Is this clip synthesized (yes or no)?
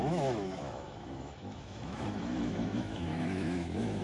yes